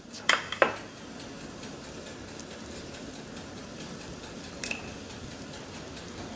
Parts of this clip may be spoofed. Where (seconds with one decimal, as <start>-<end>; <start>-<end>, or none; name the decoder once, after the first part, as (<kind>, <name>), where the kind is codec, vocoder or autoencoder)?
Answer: 0.0-2.1 (vocoder, BigVGAN v2); 3.3-6.4